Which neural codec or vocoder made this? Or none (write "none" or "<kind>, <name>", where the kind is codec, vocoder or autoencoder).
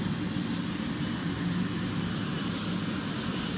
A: none